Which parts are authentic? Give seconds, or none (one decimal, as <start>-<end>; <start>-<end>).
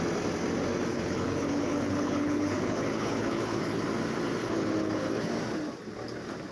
0.0-0.9; 3.8-4.4; 5.3-6.5